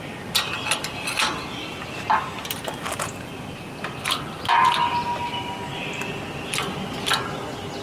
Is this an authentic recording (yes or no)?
yes